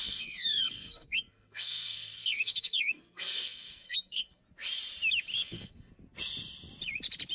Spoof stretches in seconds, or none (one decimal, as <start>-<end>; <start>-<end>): 0.0-4.4; 5.3-5.9